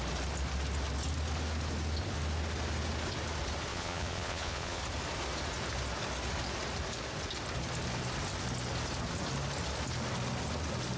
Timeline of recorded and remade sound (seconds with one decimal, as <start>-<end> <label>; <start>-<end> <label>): 0.0-3.7 recorded; 3.7-4.8 remade; 4.8-11.0 recorded